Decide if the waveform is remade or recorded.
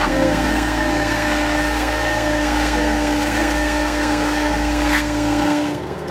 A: remade